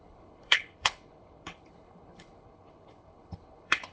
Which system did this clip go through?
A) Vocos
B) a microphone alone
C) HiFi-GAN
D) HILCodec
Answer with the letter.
D